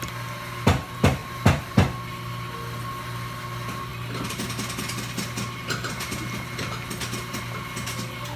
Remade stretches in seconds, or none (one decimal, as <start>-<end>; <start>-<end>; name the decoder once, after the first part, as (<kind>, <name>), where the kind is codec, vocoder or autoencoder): 1.2-1.7 (vocoder, BigVGAN v2)